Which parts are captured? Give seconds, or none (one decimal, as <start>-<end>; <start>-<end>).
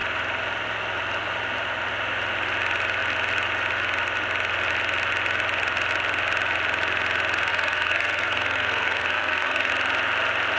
0.0-7.5; 9.7-10.6